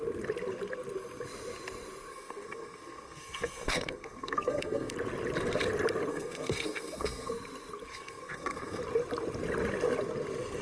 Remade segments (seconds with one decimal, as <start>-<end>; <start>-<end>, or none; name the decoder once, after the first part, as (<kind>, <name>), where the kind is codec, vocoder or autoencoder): 2.1-4.9 (codec, SNAC); 6.1-7.3; 7.9-8.8